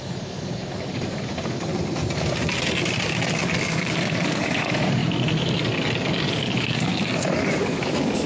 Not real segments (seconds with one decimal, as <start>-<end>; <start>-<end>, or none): 0.0-1.7; 3.4-5.0; 6.4-6.9; 7.6-8.3